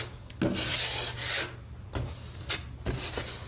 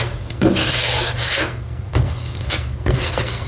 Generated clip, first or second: second